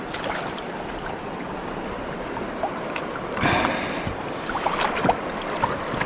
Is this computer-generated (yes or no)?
no